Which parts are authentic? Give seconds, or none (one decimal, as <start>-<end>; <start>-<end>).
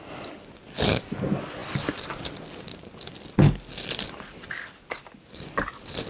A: 0.0-6.1